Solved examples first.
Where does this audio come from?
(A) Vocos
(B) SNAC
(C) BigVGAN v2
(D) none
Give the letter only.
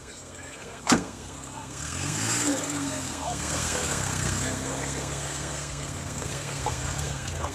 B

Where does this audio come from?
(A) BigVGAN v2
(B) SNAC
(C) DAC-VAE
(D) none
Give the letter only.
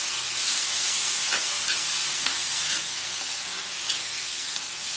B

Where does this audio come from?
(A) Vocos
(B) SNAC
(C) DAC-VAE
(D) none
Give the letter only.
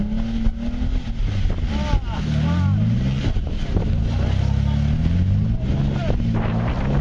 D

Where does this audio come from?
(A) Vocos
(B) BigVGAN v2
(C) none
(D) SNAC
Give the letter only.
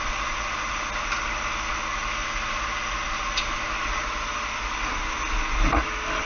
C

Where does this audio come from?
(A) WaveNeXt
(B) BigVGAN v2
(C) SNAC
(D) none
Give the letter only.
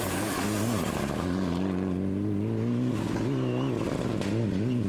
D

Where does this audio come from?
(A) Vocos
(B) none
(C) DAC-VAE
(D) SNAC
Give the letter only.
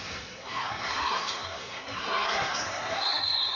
D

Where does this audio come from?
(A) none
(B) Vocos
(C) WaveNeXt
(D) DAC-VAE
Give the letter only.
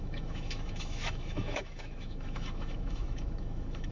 D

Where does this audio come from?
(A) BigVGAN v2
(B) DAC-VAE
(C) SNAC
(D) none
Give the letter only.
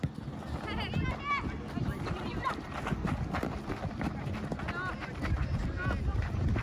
D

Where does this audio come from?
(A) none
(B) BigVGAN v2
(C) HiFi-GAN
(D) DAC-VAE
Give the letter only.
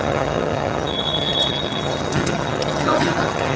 C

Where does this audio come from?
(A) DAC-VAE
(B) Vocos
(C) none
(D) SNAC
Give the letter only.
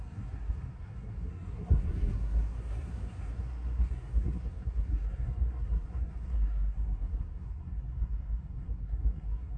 D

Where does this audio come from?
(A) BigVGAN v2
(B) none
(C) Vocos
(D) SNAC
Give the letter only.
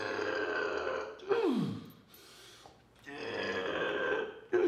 B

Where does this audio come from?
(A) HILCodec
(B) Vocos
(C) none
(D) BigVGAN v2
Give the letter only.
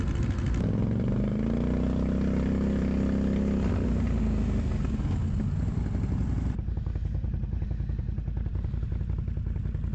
C